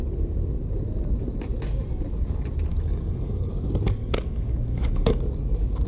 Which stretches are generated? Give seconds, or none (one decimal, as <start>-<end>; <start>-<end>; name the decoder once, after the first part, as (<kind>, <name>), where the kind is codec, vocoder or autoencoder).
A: 2.7-3.5 (codec, DAC); 4.0-5.2